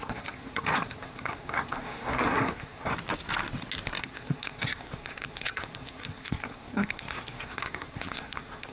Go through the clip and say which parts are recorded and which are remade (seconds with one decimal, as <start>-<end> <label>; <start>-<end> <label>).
0.0-2.9 remade; 2.9-4.0 recorded; 4.0-8.7 remade

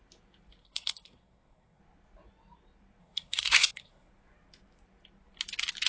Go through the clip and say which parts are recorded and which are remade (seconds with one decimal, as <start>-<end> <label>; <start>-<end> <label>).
0.0-0.6 recorded; 0.6-1.8 remade; 1.8-3.0 recorded; 3.0-4.1 remade; 4.1-5.9 recorded

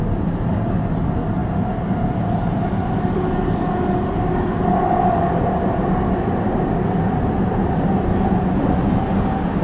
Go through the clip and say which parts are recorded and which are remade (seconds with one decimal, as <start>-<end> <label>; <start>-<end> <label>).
0.0-9.6 recorded

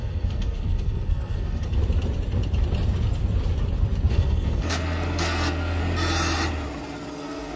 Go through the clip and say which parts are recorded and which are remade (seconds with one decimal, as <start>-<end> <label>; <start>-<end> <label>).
0.0-1.8 remade; 1.8-4.1 recorded; 4.1-5.8 remade; 5.8-7.1 recorded; 7.1-7.6 remade

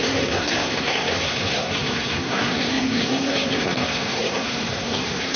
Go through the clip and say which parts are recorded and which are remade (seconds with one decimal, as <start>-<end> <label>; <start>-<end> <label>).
0.0-5.4 remade

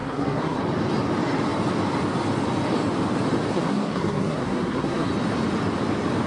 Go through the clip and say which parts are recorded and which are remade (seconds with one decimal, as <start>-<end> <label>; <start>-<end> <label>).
0.0-0.6 remade; 0.6-3.5 recorded; 3.5-5.1 remade; 5.1-6.3 recorded

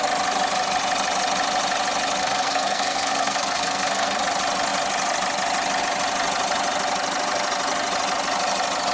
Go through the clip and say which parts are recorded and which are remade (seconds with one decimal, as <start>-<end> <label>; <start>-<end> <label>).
0.0-2.2 recorded; 2.2-4.2 remade; 4.2-8.9 recorded

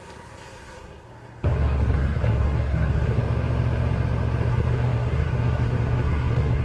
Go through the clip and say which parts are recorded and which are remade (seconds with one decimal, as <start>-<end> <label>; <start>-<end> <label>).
0.0-3.2 remade; 3.2-4.5 recorded; 4.5-6.6 remade